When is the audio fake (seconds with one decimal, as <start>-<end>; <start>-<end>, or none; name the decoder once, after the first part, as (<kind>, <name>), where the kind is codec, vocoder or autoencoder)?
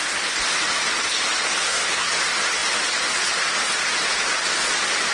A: 1.6-2.1 (codec, SNAC)